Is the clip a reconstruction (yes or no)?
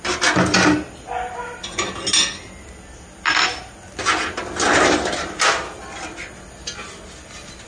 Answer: no